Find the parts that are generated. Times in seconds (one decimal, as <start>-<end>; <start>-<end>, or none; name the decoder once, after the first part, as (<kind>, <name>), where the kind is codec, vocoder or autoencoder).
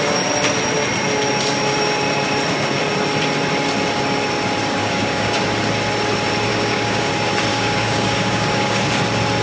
4.8-5.4 (codec, DAC); 6.5-7.1; 7.5-8.8